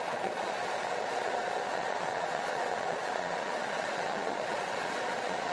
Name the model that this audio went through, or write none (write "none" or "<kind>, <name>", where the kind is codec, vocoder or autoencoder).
vocoder, Vocos